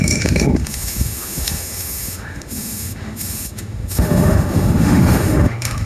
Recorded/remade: remade